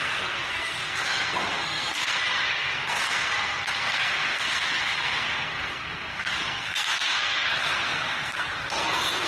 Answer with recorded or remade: remade